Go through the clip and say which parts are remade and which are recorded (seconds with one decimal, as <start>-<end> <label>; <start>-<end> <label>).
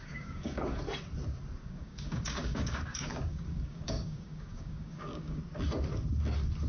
0.0-0.8 remade; 0.8-1.6 recorded; 1.6-5.4 remade; 5.4-6.7 recorded